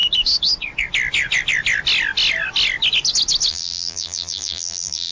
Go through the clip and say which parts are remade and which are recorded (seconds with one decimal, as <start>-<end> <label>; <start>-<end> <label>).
0.0-3.5 recorded; 3.5-5.1 remade